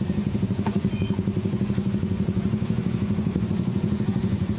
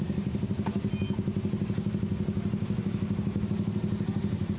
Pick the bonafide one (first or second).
second